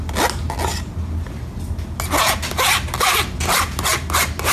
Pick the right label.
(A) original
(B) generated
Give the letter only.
A